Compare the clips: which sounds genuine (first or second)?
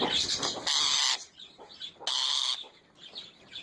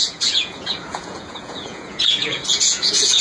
first